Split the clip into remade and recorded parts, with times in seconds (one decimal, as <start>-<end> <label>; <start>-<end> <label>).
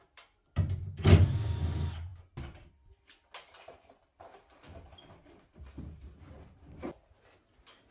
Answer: 0.0-7.9 recorded